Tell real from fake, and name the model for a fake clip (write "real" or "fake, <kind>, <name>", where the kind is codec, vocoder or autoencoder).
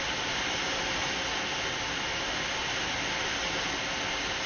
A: real